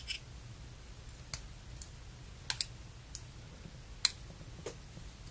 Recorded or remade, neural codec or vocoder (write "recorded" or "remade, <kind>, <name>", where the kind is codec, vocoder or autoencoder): recorded